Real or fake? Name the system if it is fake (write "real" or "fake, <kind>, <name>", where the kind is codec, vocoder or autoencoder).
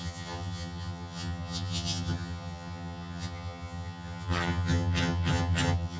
fake, vocoder, HiFi-GAN